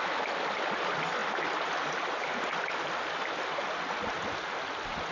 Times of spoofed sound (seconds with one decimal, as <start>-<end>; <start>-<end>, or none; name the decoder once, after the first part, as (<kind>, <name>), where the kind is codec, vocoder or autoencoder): none